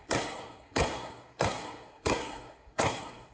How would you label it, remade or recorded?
remade